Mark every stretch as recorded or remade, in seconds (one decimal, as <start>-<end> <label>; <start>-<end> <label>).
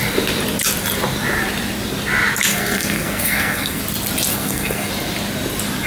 0.0-2.5 recorded; 2.5-3.8 remade; 3.8-4.3 recorded; 4.3-4.9 remade; 4.9-5.9 recorded